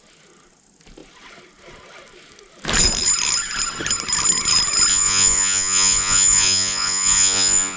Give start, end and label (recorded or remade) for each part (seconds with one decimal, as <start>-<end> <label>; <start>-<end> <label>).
0.0-4.9 recorded; 4.9-7.8 remade